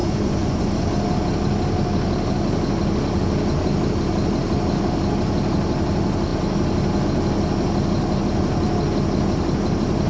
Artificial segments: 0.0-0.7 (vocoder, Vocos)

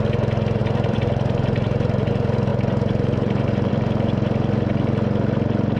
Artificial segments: 0.6-2.1 (vocoder, BigVGAN v2); 2.5-3.7

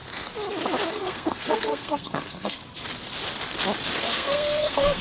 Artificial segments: 0.9-2.6 (codec, SNAC); 4.0-5.0

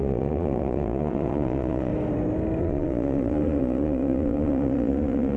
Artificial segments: 0.0-1.9 (vocoder, Vocos); 2.6-5.4

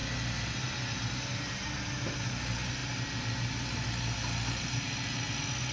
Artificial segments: none

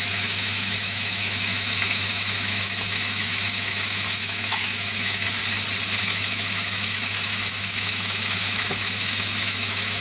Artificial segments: 0.0-5.4 (autoencoder, DAC-VAE); 6.0-10.0

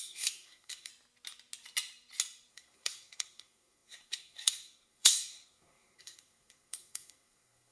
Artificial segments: 0.0-0.9 (codec, SNAC); 2.5-7.7